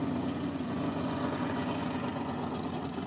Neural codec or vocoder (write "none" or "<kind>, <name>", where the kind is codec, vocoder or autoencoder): vocoder, Vocos